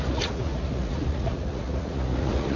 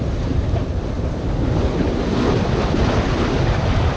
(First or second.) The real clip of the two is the second